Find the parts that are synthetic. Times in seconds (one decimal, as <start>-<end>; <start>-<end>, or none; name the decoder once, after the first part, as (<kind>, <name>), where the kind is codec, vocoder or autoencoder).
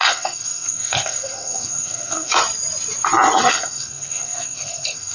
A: 0.0-2.3 (codec, SNAC); 3.5-5.1